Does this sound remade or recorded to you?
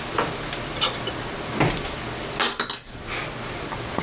recorded